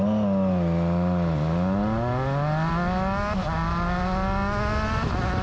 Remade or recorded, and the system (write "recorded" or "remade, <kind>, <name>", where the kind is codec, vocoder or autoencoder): recorded